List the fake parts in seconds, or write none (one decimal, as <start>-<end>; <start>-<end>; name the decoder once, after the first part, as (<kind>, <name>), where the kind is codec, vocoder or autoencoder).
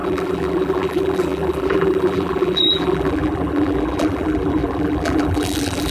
0.0-5.9 (vocoder, BigVGAN v2)